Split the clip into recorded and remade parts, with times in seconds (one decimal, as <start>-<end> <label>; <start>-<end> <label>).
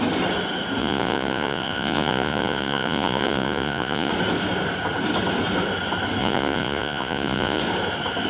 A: 0.0-0.8 recorded; 0.8-4.1 remade; 4.1-6.2 recorded; 6.2-7.6 remade; 7.6-8.3 recorded